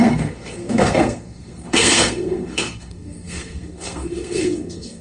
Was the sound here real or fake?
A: fake